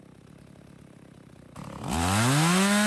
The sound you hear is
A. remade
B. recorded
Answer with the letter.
B